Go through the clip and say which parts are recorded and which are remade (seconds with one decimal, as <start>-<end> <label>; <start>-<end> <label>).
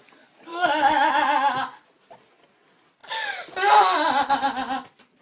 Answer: 0.0-0.5 recorded; 0.5-1.1 remade; 1.1-5.2 recorded